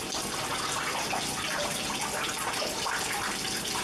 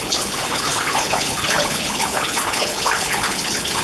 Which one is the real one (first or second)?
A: first